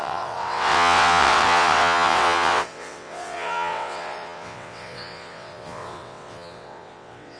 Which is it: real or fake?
fake